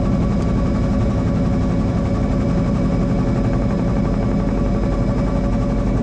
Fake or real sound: real